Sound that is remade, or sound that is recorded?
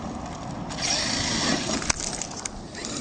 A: recorded